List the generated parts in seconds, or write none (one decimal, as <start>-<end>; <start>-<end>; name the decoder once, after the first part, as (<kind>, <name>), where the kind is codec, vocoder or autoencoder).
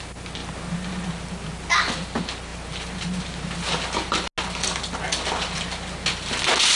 none